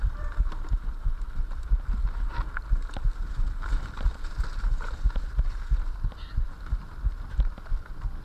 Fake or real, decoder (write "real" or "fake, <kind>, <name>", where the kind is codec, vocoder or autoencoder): real